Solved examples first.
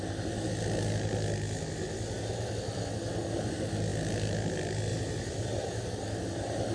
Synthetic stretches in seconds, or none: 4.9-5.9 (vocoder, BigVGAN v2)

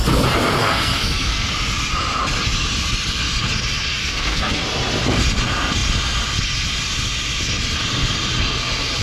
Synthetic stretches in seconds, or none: 0.6-1.5 (codec, SNAC); 4.0-4.6

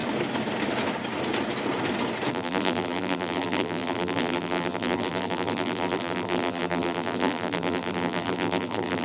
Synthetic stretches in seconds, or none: 2.3-9.0 (vocoder, BigVGAN v2)

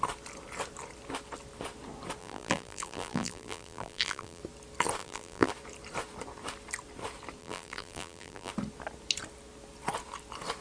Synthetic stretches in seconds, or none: 2.2-4.4 (vocoder, BigVGAN v2); 5.0-5.5; 7.4-8.5